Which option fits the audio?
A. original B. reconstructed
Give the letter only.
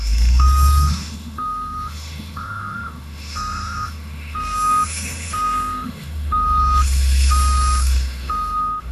B